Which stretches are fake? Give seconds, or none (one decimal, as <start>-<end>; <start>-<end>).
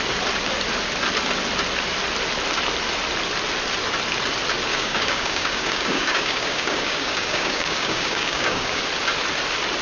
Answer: 4.7-8.8